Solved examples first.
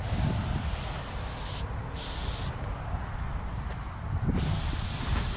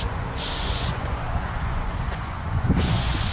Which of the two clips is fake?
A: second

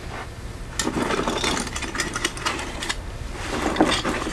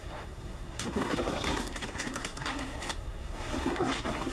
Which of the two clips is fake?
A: second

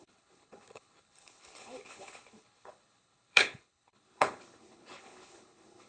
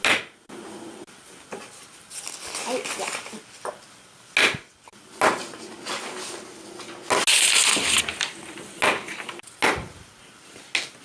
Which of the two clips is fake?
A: first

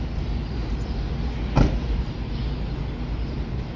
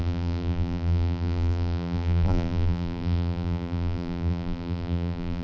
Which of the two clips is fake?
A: second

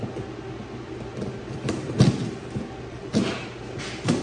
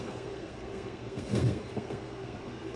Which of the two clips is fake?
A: second